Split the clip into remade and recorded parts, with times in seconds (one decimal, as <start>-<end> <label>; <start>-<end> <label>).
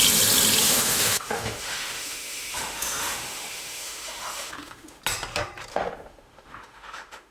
0.0-0.6 recorded; 0.6-5.0 remade; 5.0-5.7 recorded; 5.7-7.3 remade